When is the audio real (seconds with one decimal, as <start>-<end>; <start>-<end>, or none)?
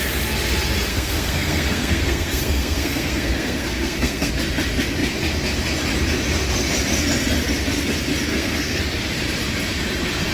0.0-0.9; 4.3-8.3; 8.8-10.3